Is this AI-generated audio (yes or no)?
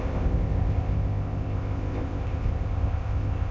yes